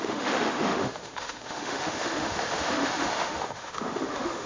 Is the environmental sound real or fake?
fake